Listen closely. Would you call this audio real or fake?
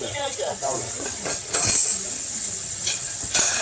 fake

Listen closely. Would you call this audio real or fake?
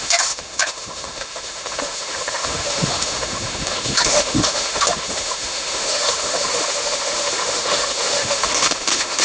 fake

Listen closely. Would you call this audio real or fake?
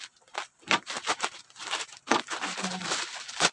fake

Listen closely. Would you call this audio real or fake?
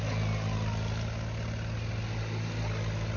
real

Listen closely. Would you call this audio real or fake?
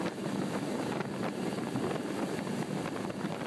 real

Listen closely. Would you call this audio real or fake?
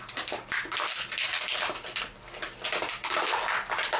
real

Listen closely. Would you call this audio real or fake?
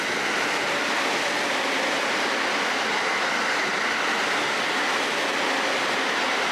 real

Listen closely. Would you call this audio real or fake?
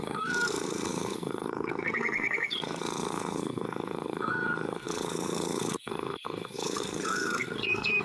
fake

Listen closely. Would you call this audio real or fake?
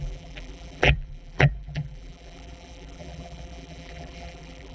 fake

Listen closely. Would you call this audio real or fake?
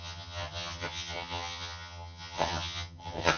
fake